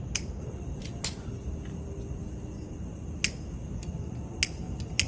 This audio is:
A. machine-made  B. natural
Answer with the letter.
B